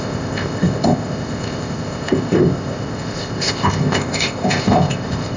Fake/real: fake